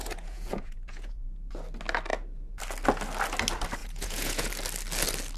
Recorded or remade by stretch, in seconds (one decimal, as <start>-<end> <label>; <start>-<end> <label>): 0.0-1.5 remade; 1.5-2.1 recorded; 2.1-2.6 remade; 2.6-3.8 recorded; 3.8-4.5 remade; 4.5-5.4 recorded